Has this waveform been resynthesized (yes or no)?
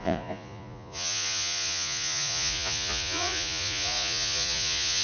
yes